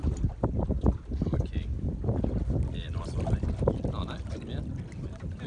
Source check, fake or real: real